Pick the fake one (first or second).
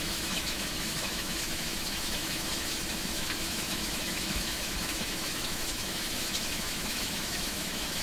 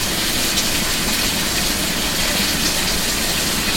first